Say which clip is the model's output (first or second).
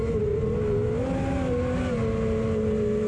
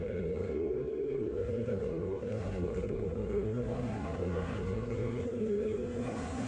second